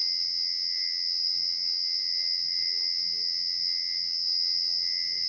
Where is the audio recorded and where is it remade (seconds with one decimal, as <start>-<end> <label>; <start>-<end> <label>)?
0.0-5.3 remade